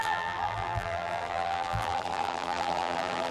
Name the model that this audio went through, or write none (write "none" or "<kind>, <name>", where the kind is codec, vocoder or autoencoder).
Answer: vocoder, BigVGAN v2